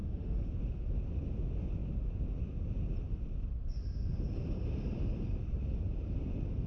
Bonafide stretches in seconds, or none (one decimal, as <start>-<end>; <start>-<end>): 0.5-6.7